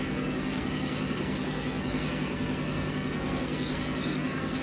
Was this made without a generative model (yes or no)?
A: no